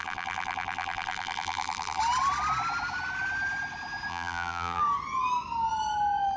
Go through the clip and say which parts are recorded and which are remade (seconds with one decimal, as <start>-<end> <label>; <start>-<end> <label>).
0.0-2.0 remade; 2.0-4.1 recorded; 4.1-4.8 remade; 4.8-6.4 recorded